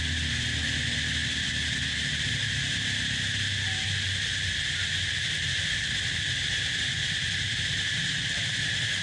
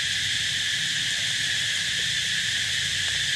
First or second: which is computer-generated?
first